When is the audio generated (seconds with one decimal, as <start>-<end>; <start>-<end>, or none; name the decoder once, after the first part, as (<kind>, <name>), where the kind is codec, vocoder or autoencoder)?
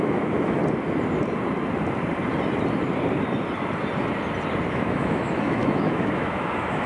0.0-0.6 (autoencoder, DAC-VAE); 4.7-6.9